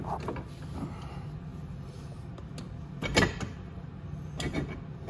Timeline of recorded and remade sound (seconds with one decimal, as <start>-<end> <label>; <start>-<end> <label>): 0.0-5.1 recorded